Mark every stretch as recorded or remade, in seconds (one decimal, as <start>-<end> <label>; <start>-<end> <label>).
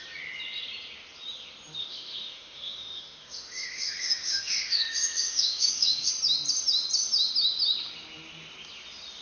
0.0-1.8 recorded; 1.8-6.1 remade; 6.1-9.2 recorded